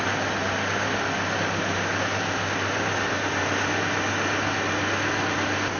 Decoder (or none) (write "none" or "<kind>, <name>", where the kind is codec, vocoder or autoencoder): none